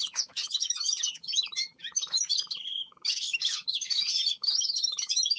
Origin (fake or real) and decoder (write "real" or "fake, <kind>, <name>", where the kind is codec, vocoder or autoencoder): fake, autoencoder, DAC-VAE